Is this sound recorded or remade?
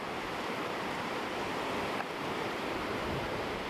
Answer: remade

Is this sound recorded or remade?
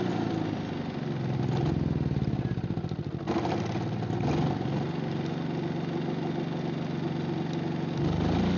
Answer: recorded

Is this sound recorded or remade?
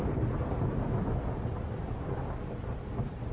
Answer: recorded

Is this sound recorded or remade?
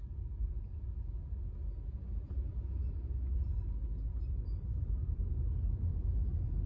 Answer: recorded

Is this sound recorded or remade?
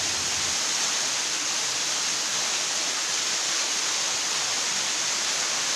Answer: recorded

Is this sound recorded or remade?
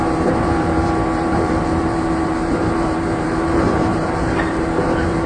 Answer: remade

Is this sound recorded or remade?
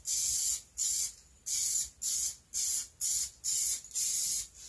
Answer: recorded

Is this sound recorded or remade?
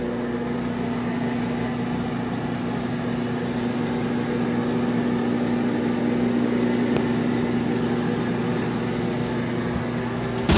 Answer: recorded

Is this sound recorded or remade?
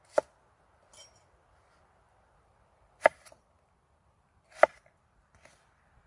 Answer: remade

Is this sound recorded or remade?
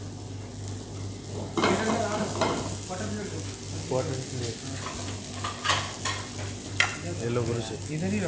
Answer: recorded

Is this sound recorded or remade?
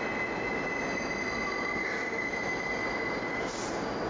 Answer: recorded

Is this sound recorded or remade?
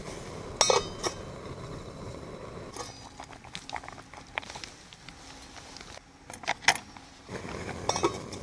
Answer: recorded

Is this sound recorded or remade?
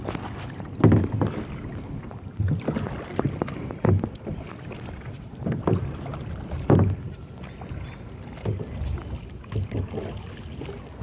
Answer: recorded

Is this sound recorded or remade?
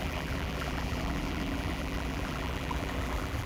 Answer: remade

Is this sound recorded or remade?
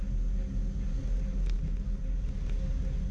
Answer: recorded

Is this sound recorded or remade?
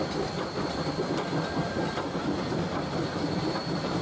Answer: remade